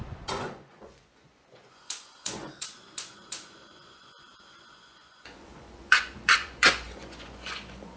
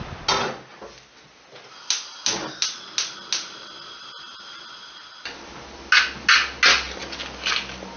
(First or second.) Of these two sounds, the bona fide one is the second